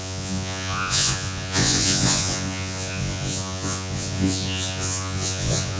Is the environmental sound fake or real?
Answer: fake